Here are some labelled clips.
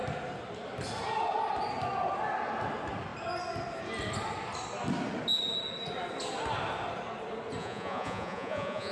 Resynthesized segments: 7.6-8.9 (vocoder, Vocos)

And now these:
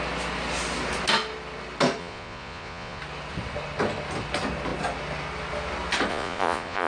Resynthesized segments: 2.0-3.0 (vocoder, Vocos); 6.1-6.9

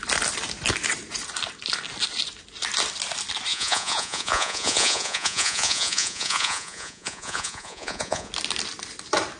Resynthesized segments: 3.5-8.3 (vocoder, Vocos)

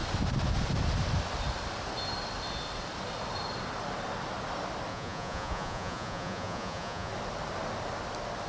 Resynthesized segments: 4.9-7.1 (vocoder, Vocos)

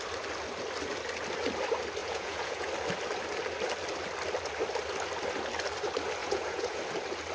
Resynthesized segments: 2.0-2.7 (vocoder, Vocos); 6.2-6.8